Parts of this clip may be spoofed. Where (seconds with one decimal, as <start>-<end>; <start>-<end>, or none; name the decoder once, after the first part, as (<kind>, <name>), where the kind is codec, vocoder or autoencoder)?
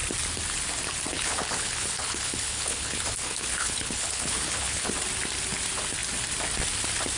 1.1-4.9 (codec, HILCodec)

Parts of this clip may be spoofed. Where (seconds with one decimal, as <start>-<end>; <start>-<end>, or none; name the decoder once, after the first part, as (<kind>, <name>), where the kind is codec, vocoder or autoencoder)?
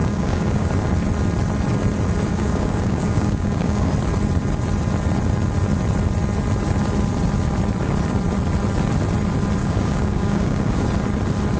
0.0-0.7 (codec, DAC); 2.3-3.9; 9.6-10.8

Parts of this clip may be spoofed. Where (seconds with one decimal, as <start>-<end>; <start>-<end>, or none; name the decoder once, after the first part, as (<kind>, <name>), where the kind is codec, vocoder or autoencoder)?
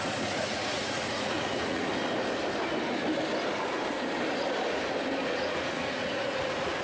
0.0-1.9 (vocoder, Vocos); 5.4-6.8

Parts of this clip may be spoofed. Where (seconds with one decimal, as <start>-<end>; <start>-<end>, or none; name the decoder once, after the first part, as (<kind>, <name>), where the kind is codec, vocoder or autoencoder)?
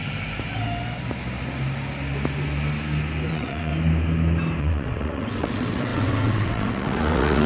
3.3-3.7 (vocoder, WaveNeXt); 4.6-7.5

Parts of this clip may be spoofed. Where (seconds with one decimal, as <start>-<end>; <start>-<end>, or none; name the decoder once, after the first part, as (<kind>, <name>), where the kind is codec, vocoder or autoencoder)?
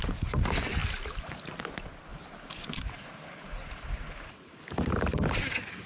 0.8-1.5 (vocoder, BigVGAN v2); 2.1-4.6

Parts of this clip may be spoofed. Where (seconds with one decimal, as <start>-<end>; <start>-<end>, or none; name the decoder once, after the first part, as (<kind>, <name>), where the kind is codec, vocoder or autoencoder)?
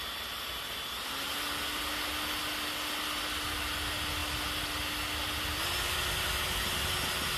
none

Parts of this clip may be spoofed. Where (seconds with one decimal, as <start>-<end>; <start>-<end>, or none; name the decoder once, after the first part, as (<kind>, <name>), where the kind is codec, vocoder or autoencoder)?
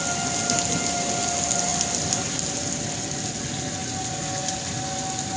none